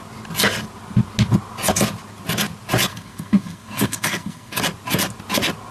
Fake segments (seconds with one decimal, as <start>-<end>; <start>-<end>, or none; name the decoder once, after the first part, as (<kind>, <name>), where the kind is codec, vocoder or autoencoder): 2.9-4.6 (codec, SNAC)